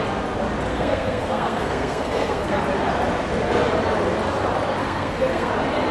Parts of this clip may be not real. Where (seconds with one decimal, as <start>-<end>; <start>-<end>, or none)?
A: 0.7-2.6; 4.8-5.5